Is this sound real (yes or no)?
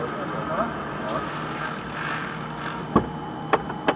yes